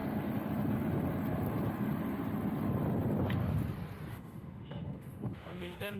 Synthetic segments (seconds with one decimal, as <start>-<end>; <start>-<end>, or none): 4.1-6.0